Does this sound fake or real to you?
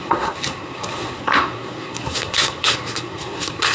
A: fake